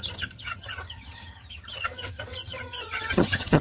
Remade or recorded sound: remade